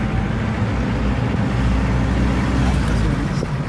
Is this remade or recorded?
recorded